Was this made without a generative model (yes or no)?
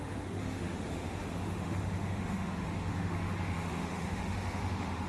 no